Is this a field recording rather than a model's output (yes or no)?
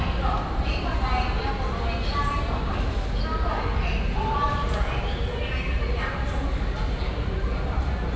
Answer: yes